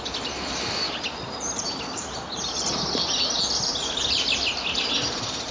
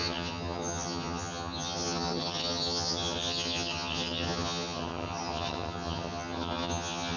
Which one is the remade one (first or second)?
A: second